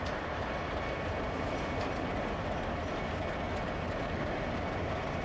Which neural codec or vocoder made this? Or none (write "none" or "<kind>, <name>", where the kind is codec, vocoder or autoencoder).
none